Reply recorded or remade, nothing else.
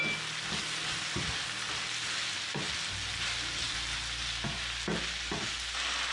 recorded